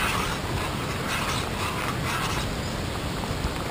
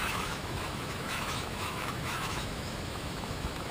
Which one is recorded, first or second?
first